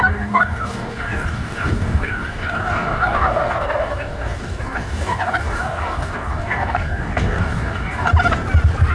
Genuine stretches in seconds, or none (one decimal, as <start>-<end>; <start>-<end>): 8.1-8.9